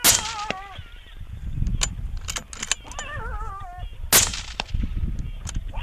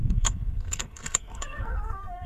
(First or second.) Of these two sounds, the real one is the first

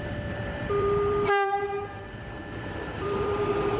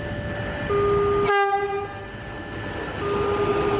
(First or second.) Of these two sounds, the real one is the second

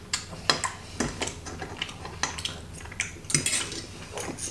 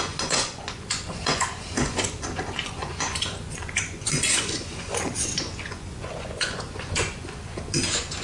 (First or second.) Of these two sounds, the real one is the first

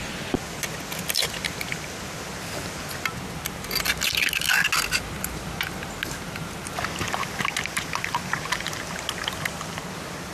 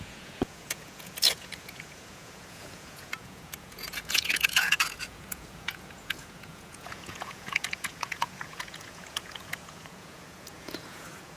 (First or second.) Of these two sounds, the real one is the first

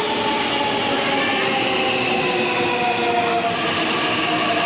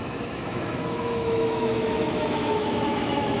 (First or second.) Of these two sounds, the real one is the first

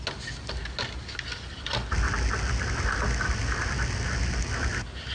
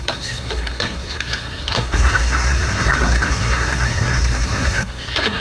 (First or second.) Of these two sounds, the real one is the first